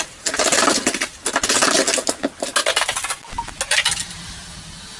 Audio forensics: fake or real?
real